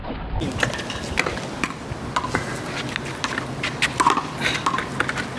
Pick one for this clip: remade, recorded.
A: recorded